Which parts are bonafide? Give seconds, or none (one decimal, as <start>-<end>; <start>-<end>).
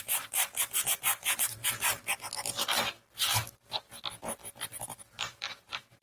1.9-3.5; 3.9-4.8